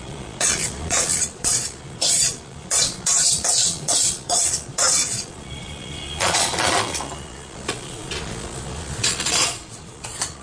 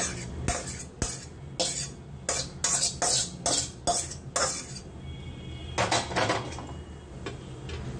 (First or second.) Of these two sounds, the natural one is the second